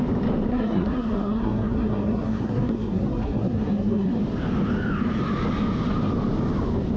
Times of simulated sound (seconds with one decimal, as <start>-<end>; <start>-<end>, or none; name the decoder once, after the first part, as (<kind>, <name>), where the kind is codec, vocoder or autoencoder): 0.5-4.2 (codec, SNAC)

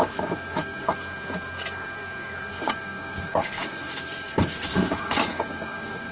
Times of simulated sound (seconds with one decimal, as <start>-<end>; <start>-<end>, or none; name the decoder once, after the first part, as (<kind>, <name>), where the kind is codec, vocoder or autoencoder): 0.0-0.9 (codec, DAC); 2.5-6.1

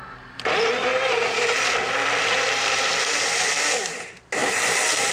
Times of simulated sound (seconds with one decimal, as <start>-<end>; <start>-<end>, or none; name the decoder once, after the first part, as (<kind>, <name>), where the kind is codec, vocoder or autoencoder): 0.9-2.9 (vocoder, BigVGAN v2); 4.4-5.1